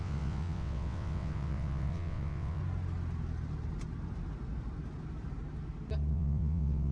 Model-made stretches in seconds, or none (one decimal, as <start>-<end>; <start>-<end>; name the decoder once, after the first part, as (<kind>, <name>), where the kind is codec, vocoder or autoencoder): 0.0-2.6 (vocoder, WaveNeXt); 6.1-6.9